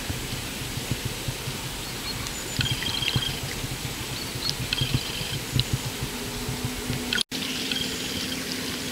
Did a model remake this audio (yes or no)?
no